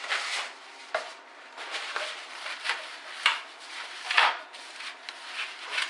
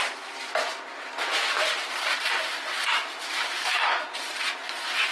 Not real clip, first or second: first